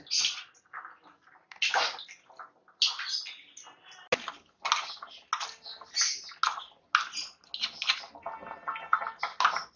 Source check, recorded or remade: recorded